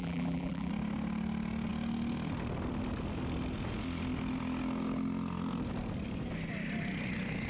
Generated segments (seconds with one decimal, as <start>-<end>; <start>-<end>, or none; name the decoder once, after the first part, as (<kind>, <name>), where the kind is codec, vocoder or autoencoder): 0.0-0.7 (vocoder, BigVGAN v2)